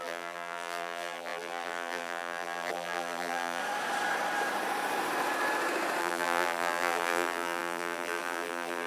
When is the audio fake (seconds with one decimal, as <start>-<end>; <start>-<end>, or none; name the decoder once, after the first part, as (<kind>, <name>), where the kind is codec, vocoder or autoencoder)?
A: 0.0-3.6 (vocoder, BigVGAN v2); 6.0-8.9